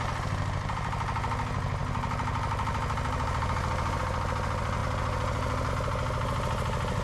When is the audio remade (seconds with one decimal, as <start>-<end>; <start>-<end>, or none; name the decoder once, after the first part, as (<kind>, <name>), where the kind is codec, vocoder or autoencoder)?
none